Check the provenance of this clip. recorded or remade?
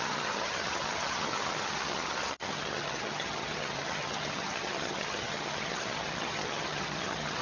remade